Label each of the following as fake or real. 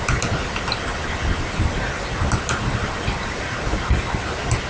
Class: real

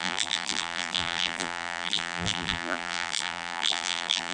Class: fake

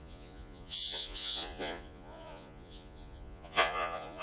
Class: fake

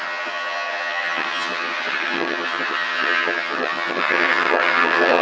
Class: fake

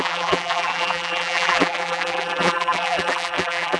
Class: fake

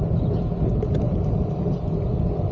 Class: real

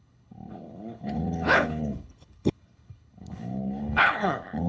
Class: fake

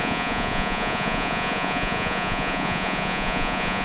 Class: fake